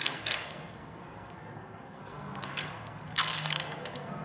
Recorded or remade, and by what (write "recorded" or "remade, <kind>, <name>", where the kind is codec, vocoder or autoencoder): remade, codec, SNAC